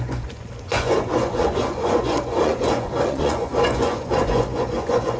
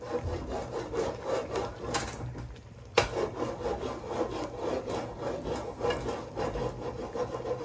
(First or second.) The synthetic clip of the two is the first